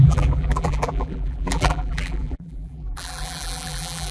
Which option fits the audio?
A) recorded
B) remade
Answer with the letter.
B